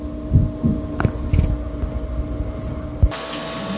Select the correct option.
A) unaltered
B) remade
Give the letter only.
A